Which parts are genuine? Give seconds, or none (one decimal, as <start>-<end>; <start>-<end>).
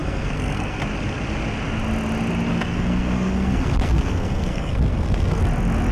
0.8-2.5; 5.4-5.9